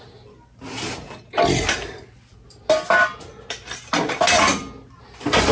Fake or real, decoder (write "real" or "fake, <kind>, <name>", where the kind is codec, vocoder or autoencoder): real